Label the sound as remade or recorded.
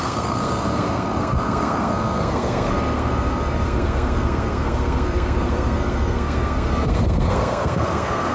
remade